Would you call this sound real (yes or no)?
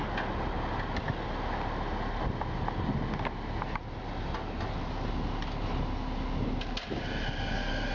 yes